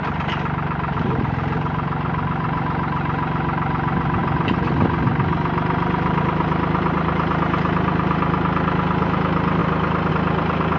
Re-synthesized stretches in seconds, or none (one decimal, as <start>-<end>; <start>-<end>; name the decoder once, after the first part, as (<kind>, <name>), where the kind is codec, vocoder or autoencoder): none